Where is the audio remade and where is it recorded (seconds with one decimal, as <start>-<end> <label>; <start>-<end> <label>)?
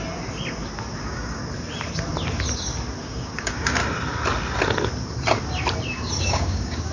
0.0-1.0 recorded; 1.0-1.4 remade; 1.4-3.0 recorded; 3.0-3.8 remade; 3.8-6.2 recorded; 6.2-6.9 remade